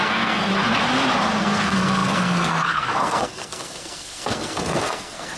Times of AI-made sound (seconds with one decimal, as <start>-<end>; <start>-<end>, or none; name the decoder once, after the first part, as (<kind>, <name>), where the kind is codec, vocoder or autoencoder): 0.0-0.5 (codec, SNAC); 1.4-5.4

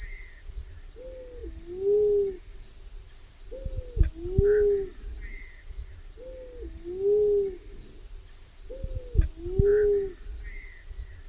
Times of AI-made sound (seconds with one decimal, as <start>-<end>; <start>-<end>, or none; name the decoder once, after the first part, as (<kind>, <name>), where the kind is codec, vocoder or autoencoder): none

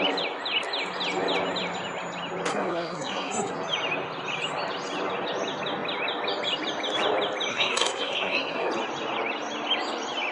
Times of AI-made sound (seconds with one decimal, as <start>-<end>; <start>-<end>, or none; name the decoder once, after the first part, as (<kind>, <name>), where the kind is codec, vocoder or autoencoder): 2.5-3.5 (codec, SNAC); 7.5-8.7